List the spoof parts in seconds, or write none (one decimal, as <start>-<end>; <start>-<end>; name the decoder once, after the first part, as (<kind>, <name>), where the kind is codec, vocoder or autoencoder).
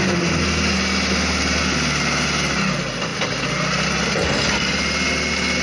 none